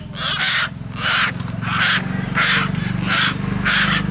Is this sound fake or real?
real